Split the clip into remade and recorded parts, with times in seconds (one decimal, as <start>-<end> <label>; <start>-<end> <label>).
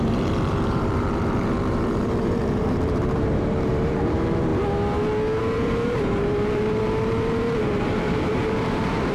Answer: 0.0-4.5 remade; 4.5-5.4 recorded; 5.4-9.1 remade